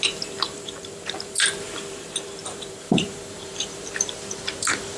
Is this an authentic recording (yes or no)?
no